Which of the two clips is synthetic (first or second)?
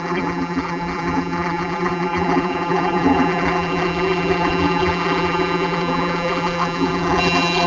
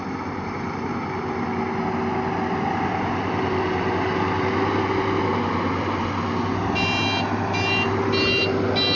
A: first